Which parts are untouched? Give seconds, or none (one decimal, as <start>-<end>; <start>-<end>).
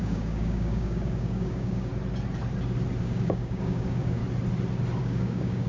1.9-3.0; 4.2-5.0